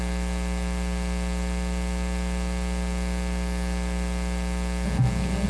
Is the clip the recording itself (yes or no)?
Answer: yes